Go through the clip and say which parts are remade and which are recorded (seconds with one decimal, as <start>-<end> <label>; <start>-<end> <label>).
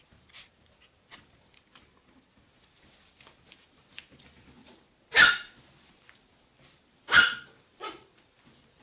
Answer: 0.0-8.8 remade